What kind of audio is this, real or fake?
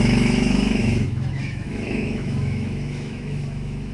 fake